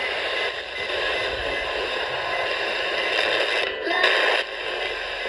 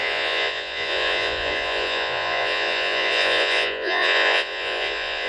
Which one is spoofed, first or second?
second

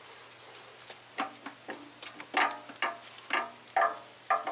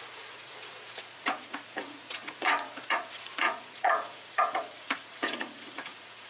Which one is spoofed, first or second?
second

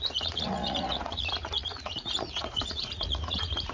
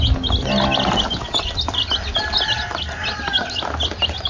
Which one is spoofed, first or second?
first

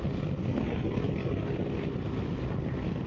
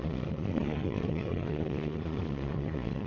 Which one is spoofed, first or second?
second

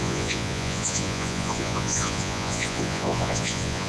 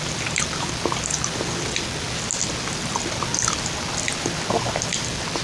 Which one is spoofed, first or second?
first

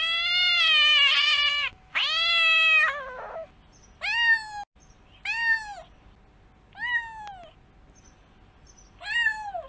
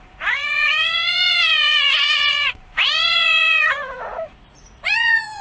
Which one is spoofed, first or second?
second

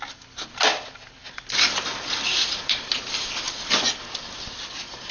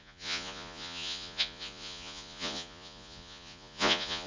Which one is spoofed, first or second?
second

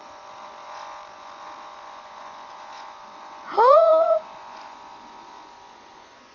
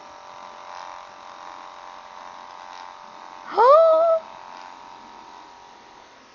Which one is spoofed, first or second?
first